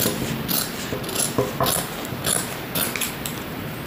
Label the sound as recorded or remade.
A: recorded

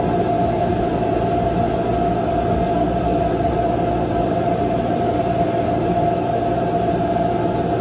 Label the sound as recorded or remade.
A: recorded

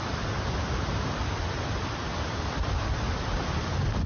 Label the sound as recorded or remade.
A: recorded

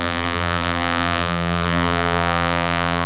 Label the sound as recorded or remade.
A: remade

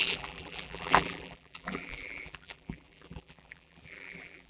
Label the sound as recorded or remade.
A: remade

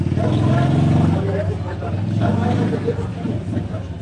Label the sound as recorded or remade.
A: recorded